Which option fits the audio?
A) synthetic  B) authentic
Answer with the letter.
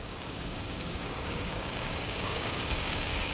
A